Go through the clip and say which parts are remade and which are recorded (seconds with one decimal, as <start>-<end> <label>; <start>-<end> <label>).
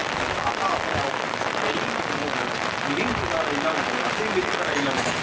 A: 0.0-5.2 recorded